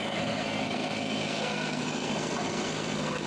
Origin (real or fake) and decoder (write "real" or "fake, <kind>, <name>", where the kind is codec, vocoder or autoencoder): fake, codec, SNAC